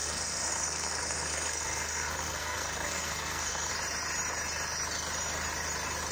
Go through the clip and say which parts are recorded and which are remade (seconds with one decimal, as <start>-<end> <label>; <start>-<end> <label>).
0.0-3.7 remade; 3.7-6.1 recorded